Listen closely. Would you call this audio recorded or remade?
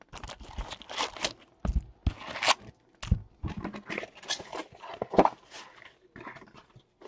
recorded